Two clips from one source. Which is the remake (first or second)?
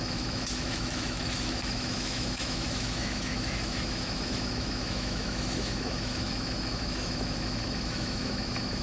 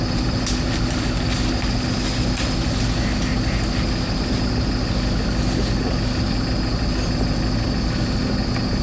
first